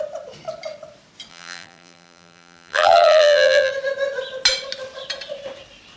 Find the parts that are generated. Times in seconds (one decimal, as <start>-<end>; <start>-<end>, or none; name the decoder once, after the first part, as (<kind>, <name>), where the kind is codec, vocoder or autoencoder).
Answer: 1.3-3.7 (vocoder, BigVGAN v2)

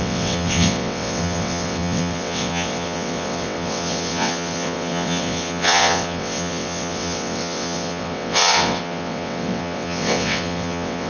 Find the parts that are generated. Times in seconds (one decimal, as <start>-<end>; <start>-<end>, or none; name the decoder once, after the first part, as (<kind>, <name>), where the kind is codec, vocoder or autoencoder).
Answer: 0.0-11.1 (vocoder, WaveNeXt)

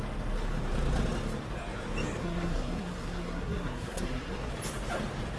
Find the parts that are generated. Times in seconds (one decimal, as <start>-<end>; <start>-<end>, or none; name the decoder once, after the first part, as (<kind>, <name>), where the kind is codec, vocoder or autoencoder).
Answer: 2.2-4.5 (codec, SNAC)